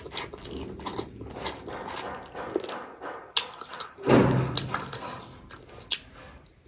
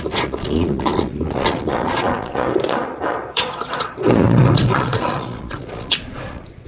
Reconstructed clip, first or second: second